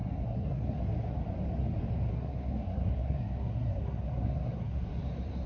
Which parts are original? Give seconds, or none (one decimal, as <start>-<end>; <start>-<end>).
0.8-2.1; 5.0-5.5